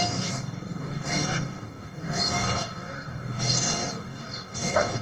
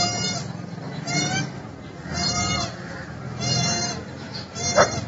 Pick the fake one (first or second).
first